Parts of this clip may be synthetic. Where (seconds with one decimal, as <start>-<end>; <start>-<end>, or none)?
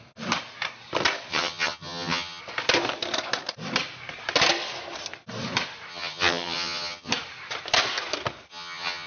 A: 1.3-2.4; 5.9-7.1; 8.5-9.1